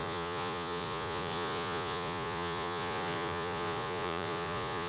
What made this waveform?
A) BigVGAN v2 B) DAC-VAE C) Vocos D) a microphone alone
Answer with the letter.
C